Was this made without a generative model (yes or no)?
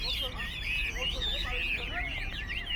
yes